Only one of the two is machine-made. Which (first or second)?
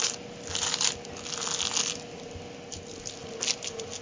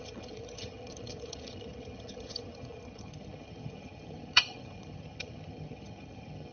second